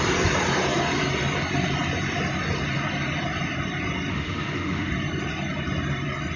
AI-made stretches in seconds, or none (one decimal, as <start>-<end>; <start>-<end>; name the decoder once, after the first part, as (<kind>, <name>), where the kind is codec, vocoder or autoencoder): 4.1-4.9 (autoencoder, DAC-VAE)